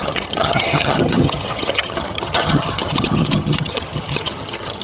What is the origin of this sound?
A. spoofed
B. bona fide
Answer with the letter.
A